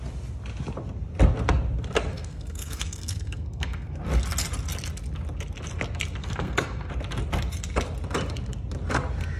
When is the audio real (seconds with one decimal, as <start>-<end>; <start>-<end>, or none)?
0.0-2.1; 4.0-6.2; 6.9-9.4